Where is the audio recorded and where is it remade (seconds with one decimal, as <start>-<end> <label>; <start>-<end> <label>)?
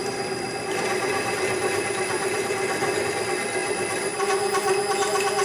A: 0.0-3.1 remade; 3.1-3.6 recorded; 3.6-4.3 remade; 4.3-5.4 recorded